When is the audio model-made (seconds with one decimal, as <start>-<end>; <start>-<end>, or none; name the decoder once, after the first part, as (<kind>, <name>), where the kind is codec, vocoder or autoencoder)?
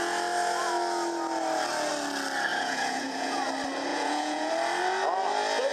2.5-3.4 (vocoder, Vocos); 3.9-4.5